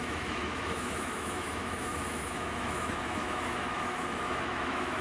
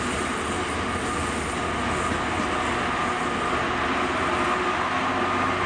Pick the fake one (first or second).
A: first